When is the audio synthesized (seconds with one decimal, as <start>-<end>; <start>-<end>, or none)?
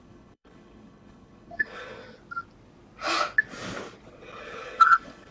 0.0-2.0; 4.4-5.3